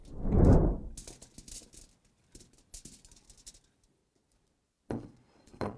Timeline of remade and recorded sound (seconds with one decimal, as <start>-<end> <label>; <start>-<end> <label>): 0.0-4.0 recorded; 4.0-5.8 remade